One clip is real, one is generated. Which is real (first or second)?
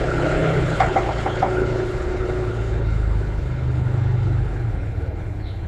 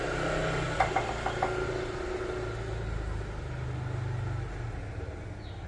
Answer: second